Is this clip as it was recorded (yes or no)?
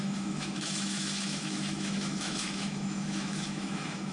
no